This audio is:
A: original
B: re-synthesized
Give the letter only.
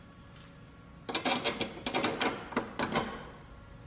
A